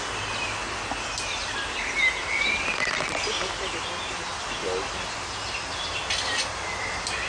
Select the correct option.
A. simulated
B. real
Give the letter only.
B